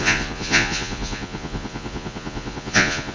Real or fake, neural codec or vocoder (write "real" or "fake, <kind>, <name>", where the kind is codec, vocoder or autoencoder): fake, vocoder, Vocos